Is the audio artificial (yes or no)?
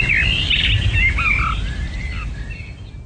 no